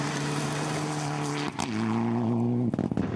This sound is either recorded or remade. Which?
recorded